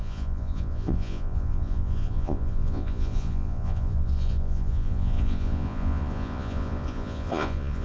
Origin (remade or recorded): remade